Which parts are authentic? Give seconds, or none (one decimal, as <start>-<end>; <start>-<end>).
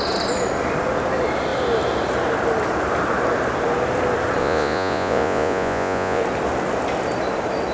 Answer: 0.0-4.4; 6.2-7.7